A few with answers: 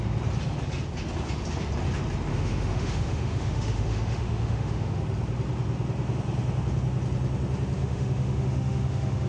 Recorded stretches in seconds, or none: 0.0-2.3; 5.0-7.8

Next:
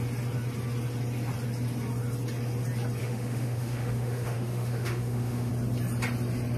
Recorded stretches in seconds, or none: 0.0-3.0; 5.5-6.6

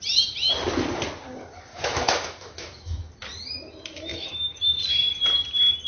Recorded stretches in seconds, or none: 0.0-1.7; 3.1-4.1; 4.8-5.9

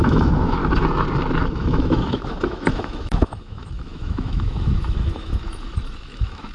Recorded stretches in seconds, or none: 0.6-1.5

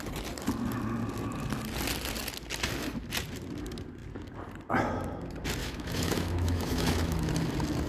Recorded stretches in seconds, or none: 0.0-5.6; 7.3-7.9

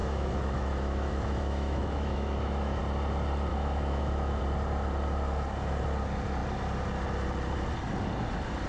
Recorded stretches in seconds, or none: 2.8-3.5; 4.4-8.7